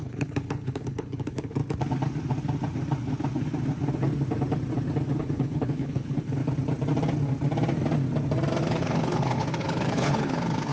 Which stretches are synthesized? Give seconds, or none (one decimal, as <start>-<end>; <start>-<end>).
0.0-1.6; 5.2-6.4; 8.6-10.7